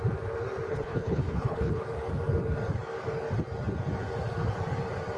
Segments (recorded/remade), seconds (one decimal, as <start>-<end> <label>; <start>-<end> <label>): 0.0-0.7 recorded; 0.7-1.8 remade; 1.8-5.2 recorded